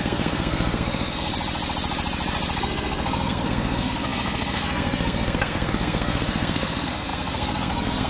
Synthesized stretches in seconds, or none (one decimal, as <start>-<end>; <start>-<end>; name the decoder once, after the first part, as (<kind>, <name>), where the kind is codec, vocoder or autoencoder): 0.0-1.3 (codec, SNAC); 2.6-8.1